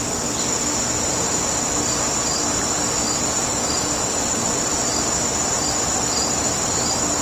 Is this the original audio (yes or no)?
yes